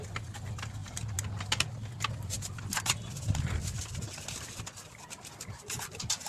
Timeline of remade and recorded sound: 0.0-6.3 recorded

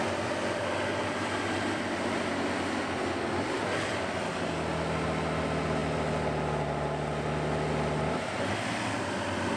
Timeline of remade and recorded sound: 0.0-9.6 recorded